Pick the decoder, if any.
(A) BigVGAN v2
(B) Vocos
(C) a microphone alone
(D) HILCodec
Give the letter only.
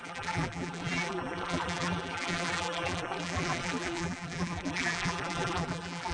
A